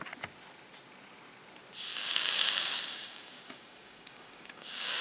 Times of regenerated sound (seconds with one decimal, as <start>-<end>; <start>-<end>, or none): 1.9-5.0